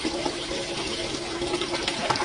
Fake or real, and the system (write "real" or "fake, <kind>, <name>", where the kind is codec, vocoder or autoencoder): real